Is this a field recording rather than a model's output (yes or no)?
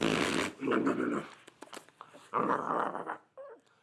yes